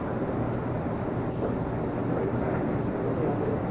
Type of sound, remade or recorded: recorded